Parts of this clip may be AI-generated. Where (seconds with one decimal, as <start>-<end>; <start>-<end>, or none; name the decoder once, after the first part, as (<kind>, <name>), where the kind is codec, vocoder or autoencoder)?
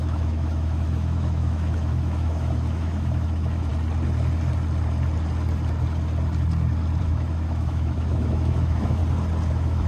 0.0-3.7 (autoencoder, DAC-VAE); 7.0-9.0; 9.5-9.9